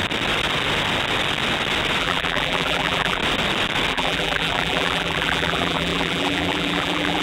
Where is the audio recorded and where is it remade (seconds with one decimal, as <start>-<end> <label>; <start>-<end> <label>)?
0.0-2.0 recorded; 2.0-3.2 remade; 3.2-3.9 recorded; 3.9-7.2 remade